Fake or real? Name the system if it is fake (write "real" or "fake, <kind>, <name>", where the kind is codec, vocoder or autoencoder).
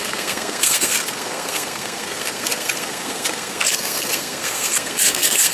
fake, codec, SNAC